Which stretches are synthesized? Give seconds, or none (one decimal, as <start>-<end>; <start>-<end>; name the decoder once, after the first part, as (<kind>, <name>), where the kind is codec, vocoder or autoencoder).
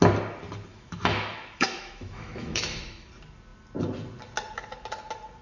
0.7-3.1 (autoencoder, DAC-VAE)